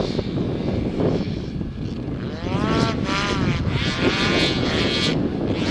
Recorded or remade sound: recorded